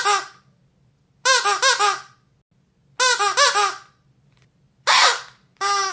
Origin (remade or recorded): recorded